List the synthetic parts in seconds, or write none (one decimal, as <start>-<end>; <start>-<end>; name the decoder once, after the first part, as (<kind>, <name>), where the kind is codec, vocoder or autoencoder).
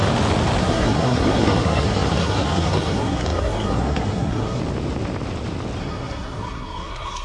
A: 0.6-4.6 (codec, SNAC); 5.8-7.2